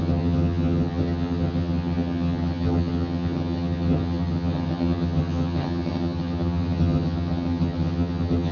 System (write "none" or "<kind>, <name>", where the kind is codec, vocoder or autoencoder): vocoder, HiFi-GAN